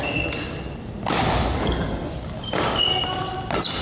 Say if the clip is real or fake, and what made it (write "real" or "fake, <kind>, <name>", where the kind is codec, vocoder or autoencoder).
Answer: real